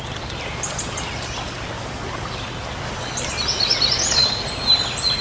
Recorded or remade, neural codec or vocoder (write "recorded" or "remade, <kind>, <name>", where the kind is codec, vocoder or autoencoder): recorded